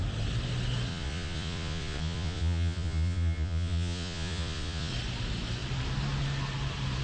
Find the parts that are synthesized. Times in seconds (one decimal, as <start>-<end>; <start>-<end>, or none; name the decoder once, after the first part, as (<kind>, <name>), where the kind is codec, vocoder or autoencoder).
0.9-4.9 (vocoder, Vocos)